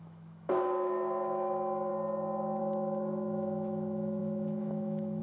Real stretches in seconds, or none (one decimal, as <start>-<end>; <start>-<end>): 1.9-2.6